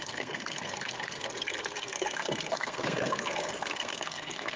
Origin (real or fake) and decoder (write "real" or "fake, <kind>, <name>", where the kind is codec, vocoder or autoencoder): fake, codec, SNAC